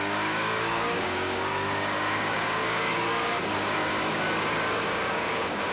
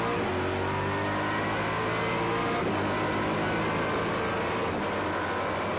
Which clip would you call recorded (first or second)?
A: second